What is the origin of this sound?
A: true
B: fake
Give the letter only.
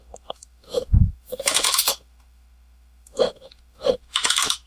B